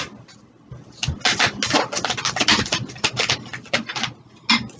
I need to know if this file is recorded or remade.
recorded